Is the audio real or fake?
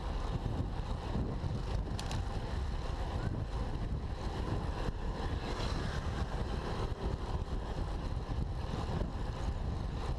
real